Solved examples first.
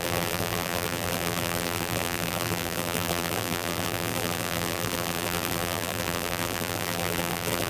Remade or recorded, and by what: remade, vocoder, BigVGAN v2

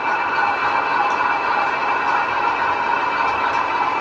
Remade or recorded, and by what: recorded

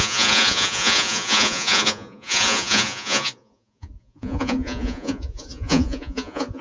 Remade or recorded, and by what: remade, vocoder, Vocos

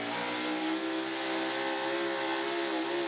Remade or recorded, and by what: recorded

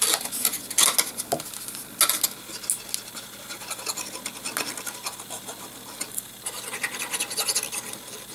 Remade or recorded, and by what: recorded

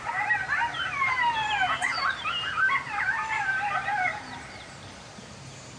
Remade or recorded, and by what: remade, vocoder, BigVGAN v2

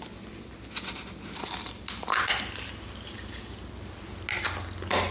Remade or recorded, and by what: recorded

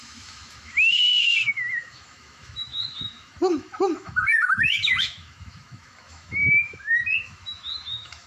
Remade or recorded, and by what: remade, autoencoder, DAC-VAE